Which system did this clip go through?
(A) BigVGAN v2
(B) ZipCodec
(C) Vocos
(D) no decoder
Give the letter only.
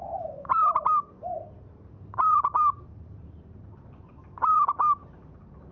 A